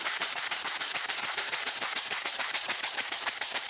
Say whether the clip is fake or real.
fake